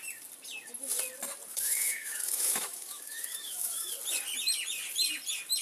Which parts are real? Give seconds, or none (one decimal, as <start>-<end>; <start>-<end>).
0.0-1.5; 3.9-5.6